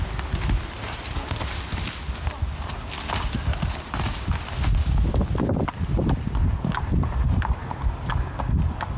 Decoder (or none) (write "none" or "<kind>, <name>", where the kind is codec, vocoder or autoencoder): none